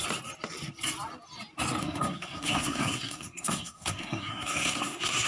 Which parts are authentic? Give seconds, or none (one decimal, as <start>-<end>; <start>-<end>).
0.0-1.8